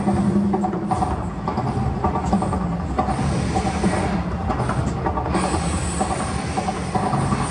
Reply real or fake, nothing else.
real